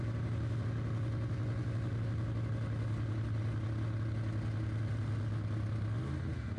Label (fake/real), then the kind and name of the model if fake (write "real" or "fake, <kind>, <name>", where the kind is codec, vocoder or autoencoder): real